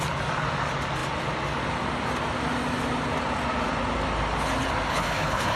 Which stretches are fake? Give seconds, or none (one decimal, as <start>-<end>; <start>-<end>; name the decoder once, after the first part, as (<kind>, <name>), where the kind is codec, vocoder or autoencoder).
4.9-5.6 (codec, HILCodec)